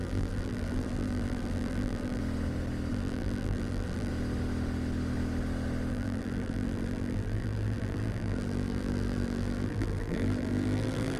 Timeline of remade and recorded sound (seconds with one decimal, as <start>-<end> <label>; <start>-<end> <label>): 0.0-2.2 remade; 2.2-2.9 recorded; 2.9-4.1 remade; 4.1-5.9 recorded; 5.9-11.2 remade